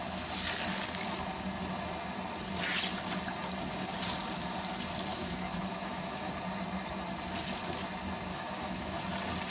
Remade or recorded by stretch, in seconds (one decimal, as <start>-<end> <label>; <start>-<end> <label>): 0.0-5.1 recorded; 5.1-6.3 remade; 6.3-8.3 recorded; 8.3-9.0 remade; 9.0-9.5 recorded